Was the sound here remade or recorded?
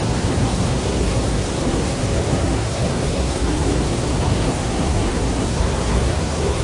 remade